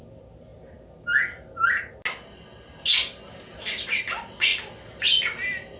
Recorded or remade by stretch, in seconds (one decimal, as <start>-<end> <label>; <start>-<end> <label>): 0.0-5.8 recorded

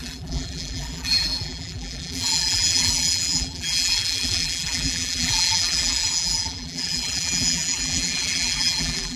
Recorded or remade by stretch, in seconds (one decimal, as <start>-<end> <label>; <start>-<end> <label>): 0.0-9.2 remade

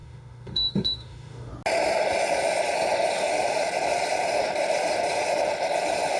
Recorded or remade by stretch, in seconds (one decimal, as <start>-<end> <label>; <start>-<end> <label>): 0.0-1.5 remade; 1.5-6.2 recorded

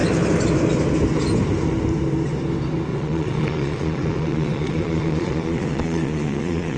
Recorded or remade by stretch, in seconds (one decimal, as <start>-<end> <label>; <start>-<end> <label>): 0.0-2.9 recorded; 2.9-6.8 remade

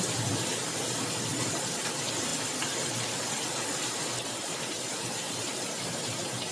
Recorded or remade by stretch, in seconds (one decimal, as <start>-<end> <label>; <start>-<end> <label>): 0.0-6.5 recorded

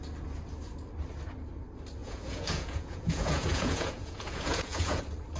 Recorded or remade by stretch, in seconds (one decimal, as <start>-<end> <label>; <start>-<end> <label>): 0.0-2.0 recorded; 2.0-5.0 remade; 5.0-5.4 recorded

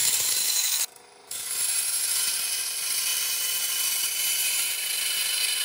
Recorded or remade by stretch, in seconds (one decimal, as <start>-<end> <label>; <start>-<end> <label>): 0.0-1.6 remade; 1.6-5.6 recorded

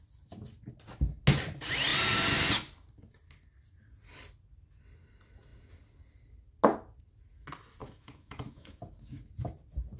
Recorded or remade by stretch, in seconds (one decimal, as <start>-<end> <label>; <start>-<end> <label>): 0.0-7.8 recorded; 7.8-8.8 remade; 8.8-10.0 recorded